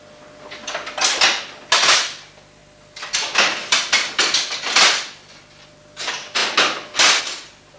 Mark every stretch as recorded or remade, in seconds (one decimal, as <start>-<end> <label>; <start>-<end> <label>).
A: 0.0-7.8 recorded